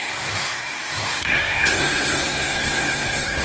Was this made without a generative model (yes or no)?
no